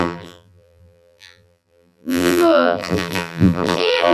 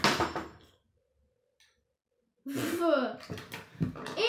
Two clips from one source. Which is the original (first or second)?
second